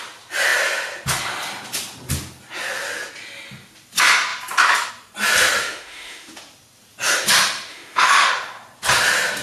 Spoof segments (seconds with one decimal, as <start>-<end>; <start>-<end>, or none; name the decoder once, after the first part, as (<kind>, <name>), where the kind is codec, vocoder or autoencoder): 5.6-6.3 (autoencoder, DAC-VAE); 7.7-8.3